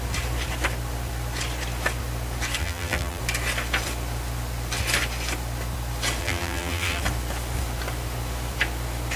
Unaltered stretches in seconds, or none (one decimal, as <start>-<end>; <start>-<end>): 0.0-2.6; 3.2-6.2; 7.0-9.2

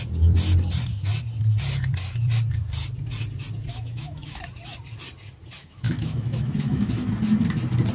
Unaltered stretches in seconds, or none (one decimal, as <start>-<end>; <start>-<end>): 0.0-3.7; 4.4-5.6; 7.1-7.9

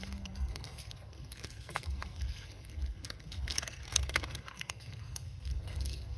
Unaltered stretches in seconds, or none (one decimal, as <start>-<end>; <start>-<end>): none

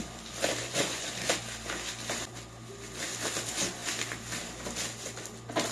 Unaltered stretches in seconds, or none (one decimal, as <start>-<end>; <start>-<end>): 0.0-0.6; 1.3-5.7

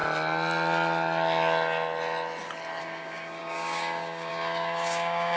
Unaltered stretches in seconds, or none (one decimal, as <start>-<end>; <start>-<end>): 0.0-2.8

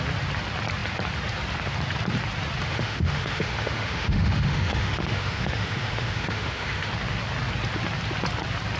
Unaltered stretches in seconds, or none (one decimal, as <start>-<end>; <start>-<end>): 0.0-2.6; 6.9-8.8

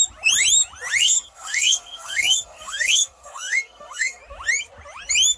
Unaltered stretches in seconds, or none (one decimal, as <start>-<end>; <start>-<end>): 0.0-1.0; 4.2-5.4